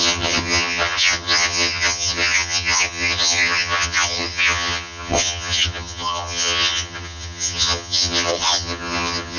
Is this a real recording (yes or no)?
no